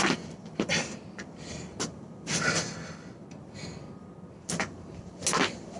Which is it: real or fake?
real